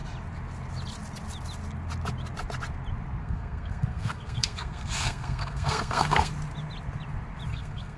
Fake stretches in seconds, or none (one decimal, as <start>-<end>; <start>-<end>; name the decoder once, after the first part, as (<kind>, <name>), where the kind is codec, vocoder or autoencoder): 3.2-6.3 (codec, SNAC); 7.5-8.0